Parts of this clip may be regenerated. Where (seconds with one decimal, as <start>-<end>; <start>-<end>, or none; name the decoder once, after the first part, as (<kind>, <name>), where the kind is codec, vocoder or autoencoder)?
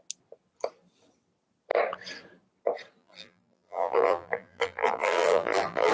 3.0-5.9 (vocoder, BigVGAN v2)